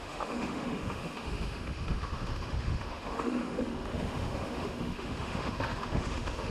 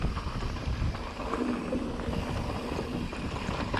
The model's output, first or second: first